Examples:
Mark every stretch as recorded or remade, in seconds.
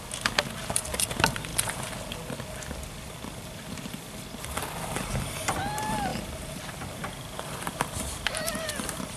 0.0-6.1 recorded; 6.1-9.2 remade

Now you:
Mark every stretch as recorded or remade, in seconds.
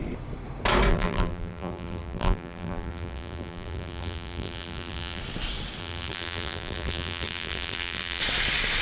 0.0-0.9 recorded; 0.9-5.2 remade; 5.2-5.8 recorded; 5.8-8.2 remade; 8.2-8.8 recorded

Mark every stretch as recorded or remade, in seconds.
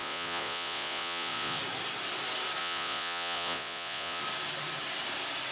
0.0-1.6 remade; 1.6-2.6 recorded; 2.6-4.2 remade; 4.2-5.5 recorded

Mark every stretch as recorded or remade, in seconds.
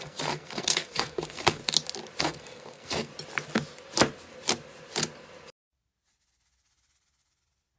0.0-1.6 remade; 1.6-2.2 recorded; 2.2-3.1 remade; 3.1-7.8 recorded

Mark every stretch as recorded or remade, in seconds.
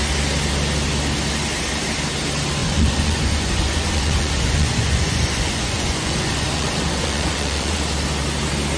0.0-2.6 recorded; 2.6-7.8 remade; 7.8-8.8 recorded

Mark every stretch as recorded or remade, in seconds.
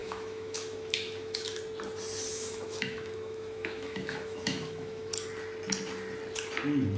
0.0-1.6 remade; 1.6-2.3 recorded; 2.3-5.1 remade; 5.1-7.0 recorded